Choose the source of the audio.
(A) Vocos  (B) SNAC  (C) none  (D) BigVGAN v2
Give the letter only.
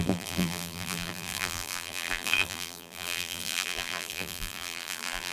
D